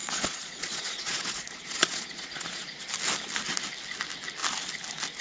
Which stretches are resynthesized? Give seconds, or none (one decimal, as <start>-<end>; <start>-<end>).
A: 0.0-2.8